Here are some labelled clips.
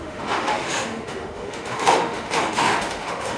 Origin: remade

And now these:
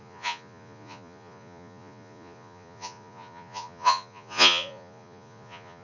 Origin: remade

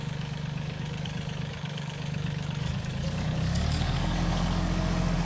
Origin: remade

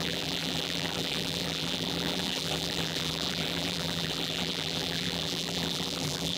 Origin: remade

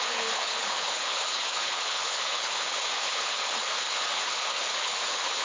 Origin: remade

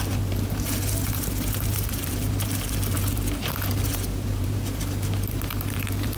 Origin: remade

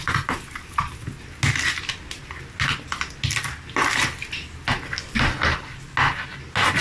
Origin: recorded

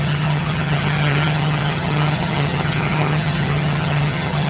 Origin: remade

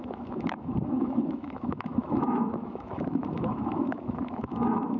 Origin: remade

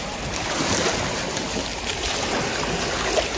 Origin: recorded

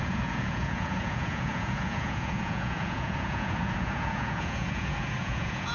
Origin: remade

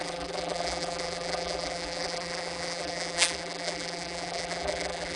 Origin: remade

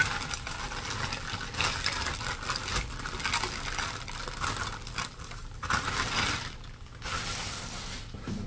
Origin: recorded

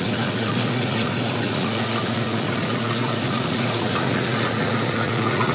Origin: remade